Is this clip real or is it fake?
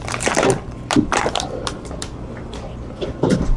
fake